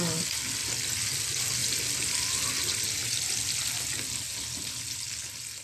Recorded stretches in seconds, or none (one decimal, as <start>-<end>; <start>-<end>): 0.0-5.6